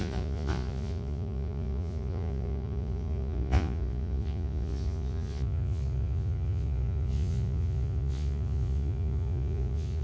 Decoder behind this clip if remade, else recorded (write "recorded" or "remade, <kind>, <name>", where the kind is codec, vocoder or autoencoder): remade, vocoder, Vocos